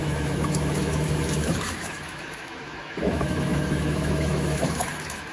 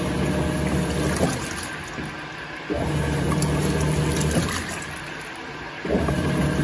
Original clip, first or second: second